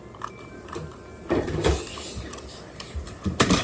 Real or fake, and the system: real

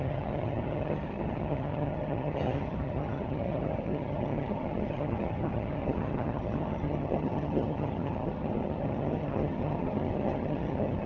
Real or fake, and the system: fake, vocoder, HiFi-GAN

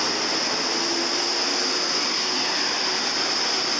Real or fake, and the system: real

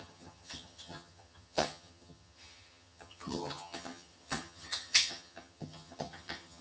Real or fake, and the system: fake, vocoder, HiFi-GAN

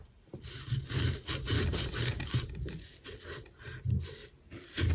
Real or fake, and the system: real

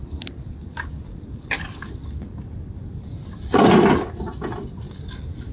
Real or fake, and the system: real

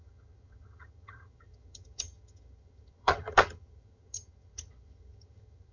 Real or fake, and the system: fake, vocoder, HiFi-GAN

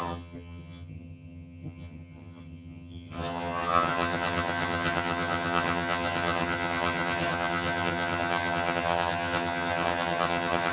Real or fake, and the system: fake, vocoder, HiFi-GAN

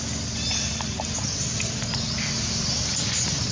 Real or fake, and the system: real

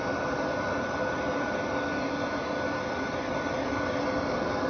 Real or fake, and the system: real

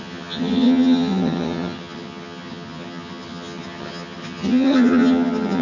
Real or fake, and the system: fake, vocoder, HiFi-GAN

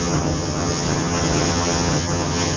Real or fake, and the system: fake, vocoder, HiFi-GAN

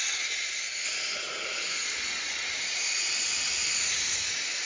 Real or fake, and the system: real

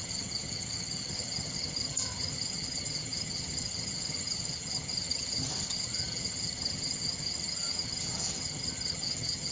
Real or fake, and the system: fake, vocoder, HiFi-GAN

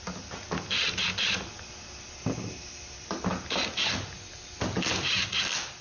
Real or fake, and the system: real